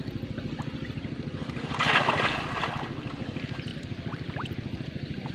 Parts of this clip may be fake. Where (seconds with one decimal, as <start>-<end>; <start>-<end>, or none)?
none